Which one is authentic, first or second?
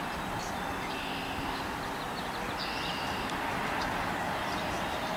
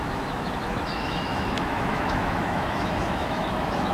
first